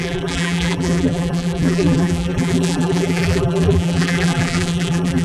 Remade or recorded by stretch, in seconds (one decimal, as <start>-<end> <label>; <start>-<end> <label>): 0.0-5.2 remade